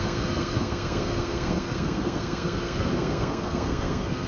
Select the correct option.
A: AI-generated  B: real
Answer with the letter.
A